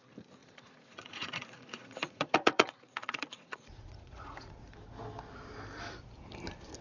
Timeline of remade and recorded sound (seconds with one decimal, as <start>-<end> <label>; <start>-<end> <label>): 0.0-0.4 recorded; 0.4-4.5 remade; 4.5-6.8 recorded